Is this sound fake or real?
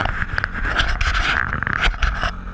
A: real